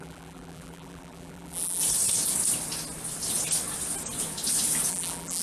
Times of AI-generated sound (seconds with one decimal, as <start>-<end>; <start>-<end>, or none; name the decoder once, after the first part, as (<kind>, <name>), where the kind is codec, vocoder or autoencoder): 0.0-1.8 (vocoder, BigVGAN v2); 4.9-5.4